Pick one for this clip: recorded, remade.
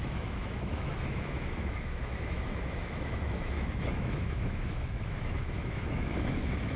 remade